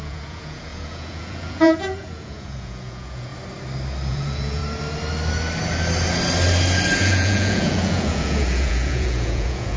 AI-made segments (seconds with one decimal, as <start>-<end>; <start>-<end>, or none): 0.0-3.3; 4.1-4.6; 7.0-9.8

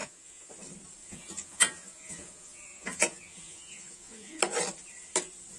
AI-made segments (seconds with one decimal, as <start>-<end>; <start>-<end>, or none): 0.0-0.5; 1.0-4.4

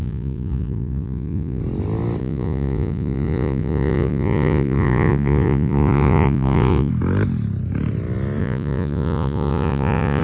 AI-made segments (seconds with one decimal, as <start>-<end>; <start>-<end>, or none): 0.0-1.6; 2.2-6.9; 8.4-10.2

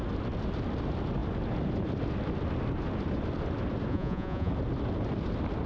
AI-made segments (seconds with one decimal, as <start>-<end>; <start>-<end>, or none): 3.9-4.5